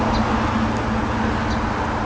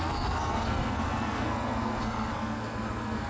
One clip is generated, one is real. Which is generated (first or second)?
second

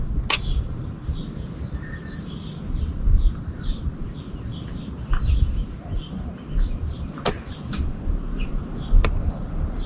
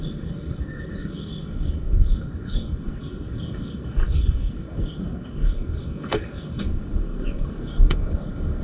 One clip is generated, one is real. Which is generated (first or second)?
second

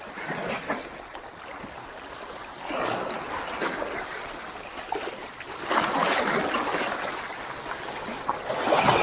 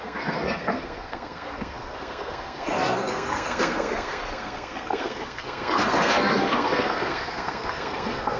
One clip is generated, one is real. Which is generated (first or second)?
second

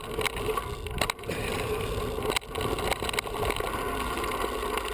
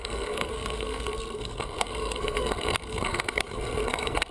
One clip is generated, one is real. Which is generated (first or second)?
second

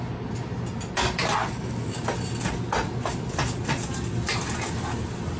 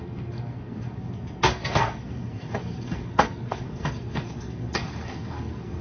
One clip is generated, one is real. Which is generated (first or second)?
second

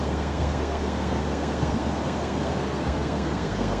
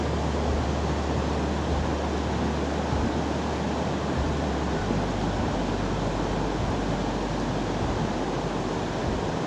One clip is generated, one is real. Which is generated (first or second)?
first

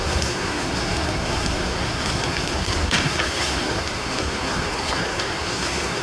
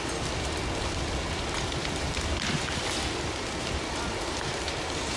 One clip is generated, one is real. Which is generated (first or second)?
first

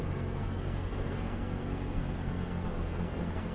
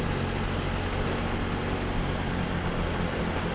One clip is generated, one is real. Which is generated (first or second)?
first